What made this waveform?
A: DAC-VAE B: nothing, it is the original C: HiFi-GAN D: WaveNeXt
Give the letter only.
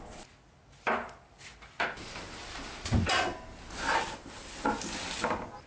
B